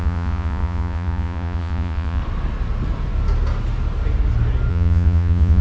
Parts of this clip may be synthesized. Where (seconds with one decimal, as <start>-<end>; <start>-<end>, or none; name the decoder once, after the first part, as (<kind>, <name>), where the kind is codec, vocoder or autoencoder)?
0.0-2.2 (vocoder, Vocos); 4.7-5.6